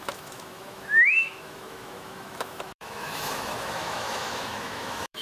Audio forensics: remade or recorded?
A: remade